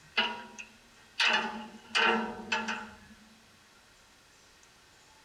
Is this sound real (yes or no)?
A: yes